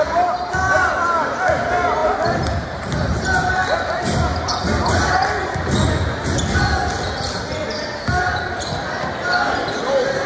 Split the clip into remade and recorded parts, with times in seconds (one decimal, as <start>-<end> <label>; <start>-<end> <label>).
0.0-10.3 recorded